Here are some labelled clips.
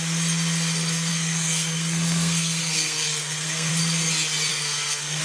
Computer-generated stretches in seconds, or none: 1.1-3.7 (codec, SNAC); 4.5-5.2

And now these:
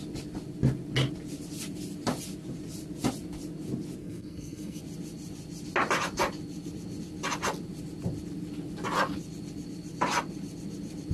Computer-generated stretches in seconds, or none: 4.0-4.8 (codec, SNAC)

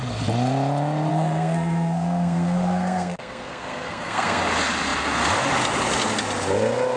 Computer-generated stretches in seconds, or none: 1.1-4.4 (codec, SNAC)

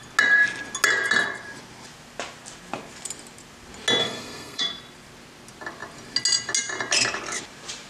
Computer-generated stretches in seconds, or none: 4.0-4.6 (codec, SNAC)

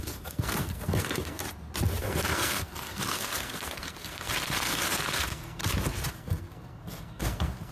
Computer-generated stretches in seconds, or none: 0.0-1.4 (codec, SNAC); 2.0-5.6; 6.1-7.7

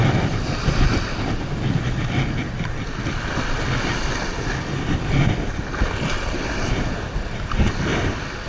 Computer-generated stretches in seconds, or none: none